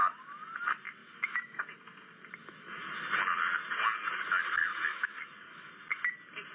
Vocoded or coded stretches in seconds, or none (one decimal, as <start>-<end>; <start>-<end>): 1.0-1.6; 2.4-2.9; 4.6-5.7